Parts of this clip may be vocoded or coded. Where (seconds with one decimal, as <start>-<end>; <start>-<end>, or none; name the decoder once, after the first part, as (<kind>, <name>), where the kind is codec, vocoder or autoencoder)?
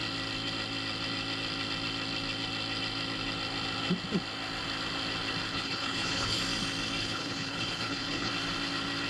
5.5-6.4 (codec, HILCodec); 7.0-8.3